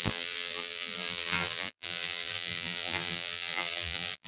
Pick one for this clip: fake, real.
fake